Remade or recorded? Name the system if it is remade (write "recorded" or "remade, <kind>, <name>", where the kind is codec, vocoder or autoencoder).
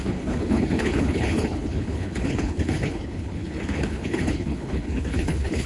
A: remade, codec, HILCodec